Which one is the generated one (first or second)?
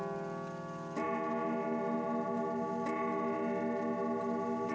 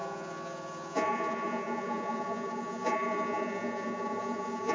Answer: second